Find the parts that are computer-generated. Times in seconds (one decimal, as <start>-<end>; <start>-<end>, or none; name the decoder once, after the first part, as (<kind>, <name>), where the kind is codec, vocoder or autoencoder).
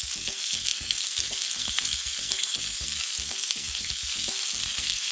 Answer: 0.0-5.1 (codec, SNAC)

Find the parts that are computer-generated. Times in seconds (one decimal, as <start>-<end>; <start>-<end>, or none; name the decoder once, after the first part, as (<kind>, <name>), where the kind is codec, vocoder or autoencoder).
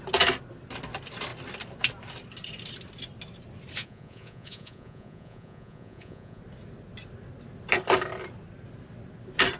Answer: 3.8-6.4 (vocoder, Vocos)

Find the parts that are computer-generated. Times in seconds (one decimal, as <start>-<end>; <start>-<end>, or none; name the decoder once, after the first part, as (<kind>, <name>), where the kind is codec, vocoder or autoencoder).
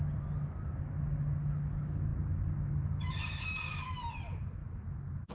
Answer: none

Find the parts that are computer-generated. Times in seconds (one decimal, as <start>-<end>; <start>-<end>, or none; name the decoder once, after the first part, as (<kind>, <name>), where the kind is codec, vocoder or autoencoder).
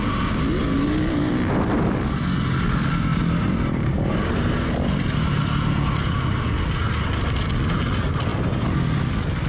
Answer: 3.1-5.4 (vocoder, BigVGAN v2)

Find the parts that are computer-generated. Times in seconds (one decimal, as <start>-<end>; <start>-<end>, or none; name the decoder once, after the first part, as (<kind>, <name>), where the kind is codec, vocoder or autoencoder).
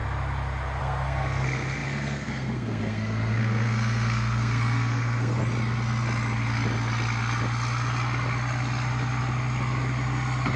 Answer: 0.8-5.4 (codec, SNAC)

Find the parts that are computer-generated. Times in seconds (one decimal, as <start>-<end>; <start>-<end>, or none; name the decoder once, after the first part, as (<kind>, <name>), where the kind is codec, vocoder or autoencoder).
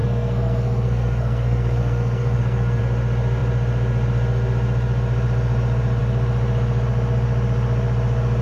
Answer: 0.0-2.8 (codec, SNAC)